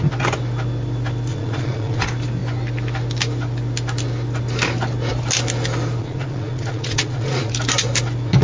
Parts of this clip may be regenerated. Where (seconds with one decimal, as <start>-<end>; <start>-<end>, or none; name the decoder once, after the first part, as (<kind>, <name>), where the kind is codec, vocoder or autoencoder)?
1.3-2.0 (vocoder, Vocos); 6.0-7.5

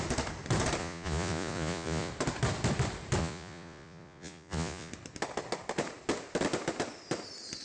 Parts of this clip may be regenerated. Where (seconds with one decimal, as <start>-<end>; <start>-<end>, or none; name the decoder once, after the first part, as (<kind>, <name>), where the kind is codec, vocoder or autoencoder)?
0.8-2.1 (vocoder, Vocos); 3.2-4.9

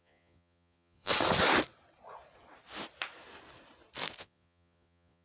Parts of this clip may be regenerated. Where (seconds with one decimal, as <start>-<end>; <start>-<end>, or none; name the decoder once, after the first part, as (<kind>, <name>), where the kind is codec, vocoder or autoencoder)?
0.0-1.1 (vocoder, Vocos); 4.2-5.2

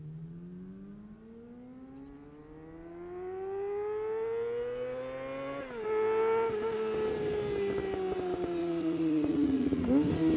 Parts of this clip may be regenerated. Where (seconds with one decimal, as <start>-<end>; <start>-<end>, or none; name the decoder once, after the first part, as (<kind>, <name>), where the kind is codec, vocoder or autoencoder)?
8.6-9.8 (vocoder, Vocos)

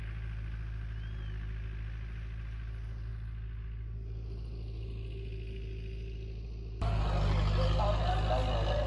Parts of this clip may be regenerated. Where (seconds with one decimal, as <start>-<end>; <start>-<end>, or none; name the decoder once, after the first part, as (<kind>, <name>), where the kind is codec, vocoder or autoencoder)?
none

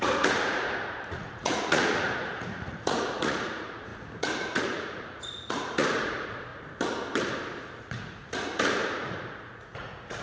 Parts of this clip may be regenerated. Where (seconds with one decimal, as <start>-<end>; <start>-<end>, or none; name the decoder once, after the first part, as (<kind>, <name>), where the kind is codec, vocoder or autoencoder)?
0.0-6.5 (vocoder, Vocos); 7.8-10.2

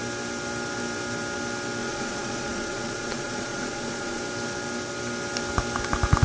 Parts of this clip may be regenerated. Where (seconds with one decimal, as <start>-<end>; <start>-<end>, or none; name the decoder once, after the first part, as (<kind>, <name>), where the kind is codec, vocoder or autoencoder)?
1.8-4.2 (vocoder, Vocos)